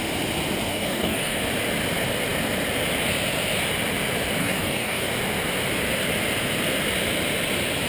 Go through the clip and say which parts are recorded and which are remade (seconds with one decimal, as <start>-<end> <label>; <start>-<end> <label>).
0.0-0.7 recorded; 0.7-1.4 remade; 1.4-4.4 recorded; 4.4-5.1 remade; 5.1-7.9 recorded